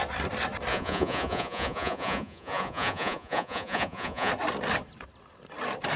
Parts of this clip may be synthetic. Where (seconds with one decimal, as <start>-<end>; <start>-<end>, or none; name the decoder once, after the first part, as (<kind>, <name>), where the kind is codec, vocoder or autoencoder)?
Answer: 0.7-4.3 (vocoder, Vocos)